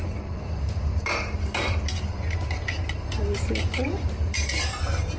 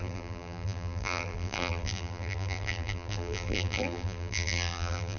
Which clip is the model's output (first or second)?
second